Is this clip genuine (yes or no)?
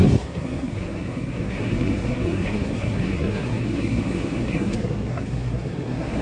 no